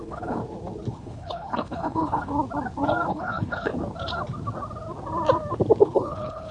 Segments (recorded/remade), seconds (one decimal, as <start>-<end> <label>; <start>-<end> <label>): 0.0-0.4 remade; 0.4-0.9 recorded; 0.9-2.3 remade; 2.3-3.1 recorded; 3.1-3.7 remade; 3.7-5.8 recorded; 5.8-6.5 remade